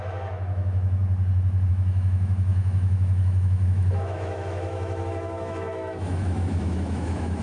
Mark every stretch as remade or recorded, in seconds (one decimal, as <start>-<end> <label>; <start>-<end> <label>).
0.0-1.0 remade; 1.0-1.7 recorded; 1.7-7.4 remade

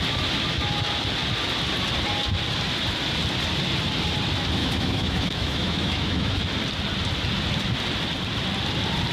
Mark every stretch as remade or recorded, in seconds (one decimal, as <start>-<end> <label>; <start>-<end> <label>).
0.0-4.6 recorded; 4.6-6.4 remade; 6.4-9.1 recorded